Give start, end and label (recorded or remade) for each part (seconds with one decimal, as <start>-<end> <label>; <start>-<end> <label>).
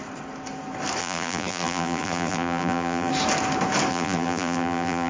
0.0-1.0 recorded; 1.0-3.1 remade; 3.1-3.9 recorded; 3.9-5.1 remade